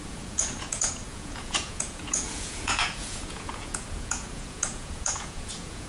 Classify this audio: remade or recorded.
remade